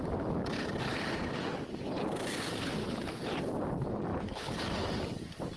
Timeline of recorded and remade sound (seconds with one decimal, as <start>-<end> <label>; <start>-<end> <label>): 0.0-2.8 recorded; 2.8-3.4 remade; 3.4-4.1 recorded; 4.1-4.6 remade; 4.6-5.6 recorded